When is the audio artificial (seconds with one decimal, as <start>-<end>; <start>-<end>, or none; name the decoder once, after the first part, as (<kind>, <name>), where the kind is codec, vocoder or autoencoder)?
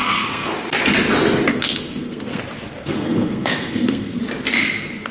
0.0-0.5 (codec, SNAC); 1.5-2.4; 2.8-4.2